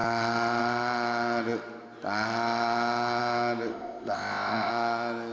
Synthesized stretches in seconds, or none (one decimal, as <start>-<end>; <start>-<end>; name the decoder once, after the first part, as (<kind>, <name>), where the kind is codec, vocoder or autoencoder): 3.7-4.7 (codec, ZipCodec)